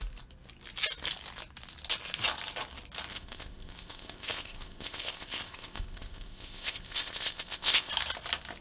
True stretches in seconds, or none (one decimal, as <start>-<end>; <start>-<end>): 0.0-3.1; 7.9-8.6

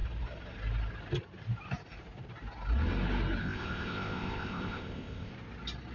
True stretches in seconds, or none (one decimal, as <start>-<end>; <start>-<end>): 0.0-3.4; 5.3-5.9

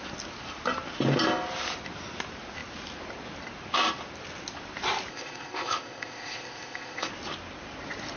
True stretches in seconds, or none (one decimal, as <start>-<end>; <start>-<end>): 0.0-5.1; 7.1-8.2

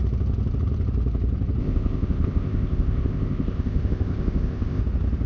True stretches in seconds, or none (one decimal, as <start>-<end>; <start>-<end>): 0.0-1.6; 4.8-5.3

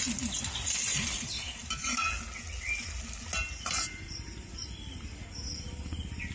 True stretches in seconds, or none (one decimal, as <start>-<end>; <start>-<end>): 0.0-6.3